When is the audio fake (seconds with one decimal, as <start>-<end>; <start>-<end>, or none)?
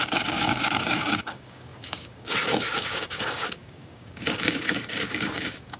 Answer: 0.0-5.8